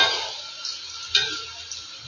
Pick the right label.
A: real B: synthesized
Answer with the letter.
A